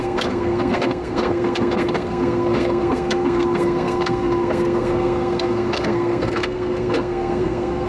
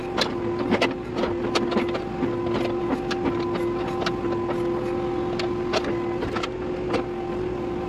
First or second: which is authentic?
second